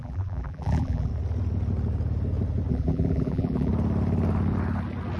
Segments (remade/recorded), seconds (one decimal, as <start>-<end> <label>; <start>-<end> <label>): 0.0-1.1 remade; 1.1-2.7 recorded; 2.7-3.7 remade; 3.7-5.2 recorded